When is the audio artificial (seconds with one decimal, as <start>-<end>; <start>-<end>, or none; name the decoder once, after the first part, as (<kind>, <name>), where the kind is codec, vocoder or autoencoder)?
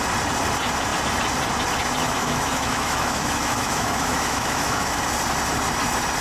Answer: 2.0-5.0 (autoencoder, DAC-VAE)